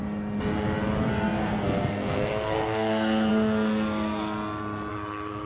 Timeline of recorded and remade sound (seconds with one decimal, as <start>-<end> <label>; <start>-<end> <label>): 0.0-1.1 recorded; 1.1-3.3 remade; 3.3-4.9 recorded; 4.9-5.5 remade